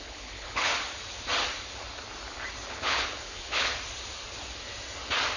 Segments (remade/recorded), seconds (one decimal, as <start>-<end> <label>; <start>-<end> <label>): 0.0-0.7 remade; 0.7-2.7 recorded; 2.7-3.7 remade; 3.7-5.4 recorded